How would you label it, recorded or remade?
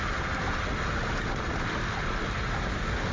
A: recorded